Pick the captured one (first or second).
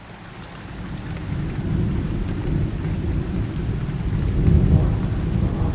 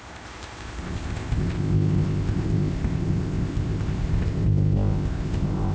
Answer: first